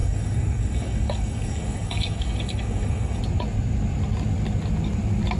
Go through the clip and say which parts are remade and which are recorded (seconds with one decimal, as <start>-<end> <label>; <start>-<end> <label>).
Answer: 0.0-3.2 remade; 3.2-5.4 recorded